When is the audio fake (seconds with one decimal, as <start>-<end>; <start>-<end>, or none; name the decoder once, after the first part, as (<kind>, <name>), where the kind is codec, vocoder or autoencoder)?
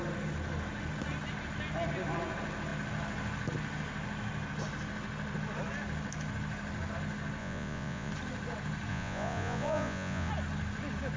7.4-8.1 (vocoder, Vocos); 8.9-10.3